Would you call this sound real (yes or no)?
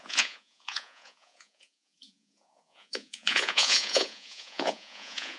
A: no